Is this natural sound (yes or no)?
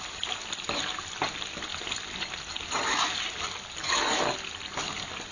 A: yes